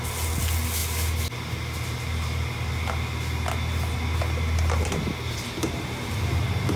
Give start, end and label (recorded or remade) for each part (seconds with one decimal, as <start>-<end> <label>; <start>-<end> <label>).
0.0-6.8 recorded